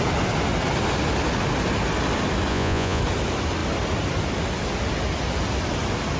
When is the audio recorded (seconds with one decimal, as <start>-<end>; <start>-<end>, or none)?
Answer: 0.0-2.5; 3.0-6.2